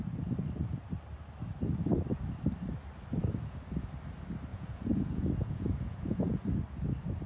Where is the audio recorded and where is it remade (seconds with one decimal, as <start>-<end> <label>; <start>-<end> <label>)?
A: 0.0-4.5 recorded; 4.5-6.5 remade; 6.5-7.3 recorded